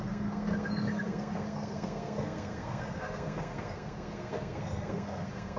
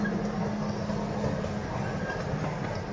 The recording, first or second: second